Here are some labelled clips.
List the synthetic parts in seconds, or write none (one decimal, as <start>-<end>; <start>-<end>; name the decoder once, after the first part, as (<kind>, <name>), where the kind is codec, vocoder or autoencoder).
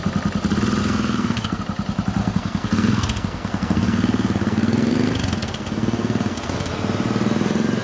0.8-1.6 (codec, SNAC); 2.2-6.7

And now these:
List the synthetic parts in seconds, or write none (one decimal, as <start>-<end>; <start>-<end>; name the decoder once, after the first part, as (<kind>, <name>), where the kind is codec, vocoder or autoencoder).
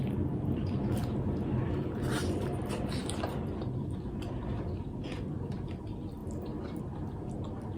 0.0-6.2 (vocoder, BigVGAN v2); 6.8-7.8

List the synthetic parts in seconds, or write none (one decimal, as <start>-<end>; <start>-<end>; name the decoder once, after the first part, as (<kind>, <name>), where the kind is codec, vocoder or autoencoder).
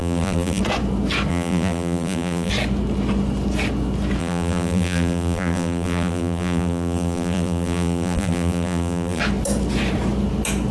0.0-0.6 (vocoder, BigVGAN v2); 1.3-2.5; 4.2-9.2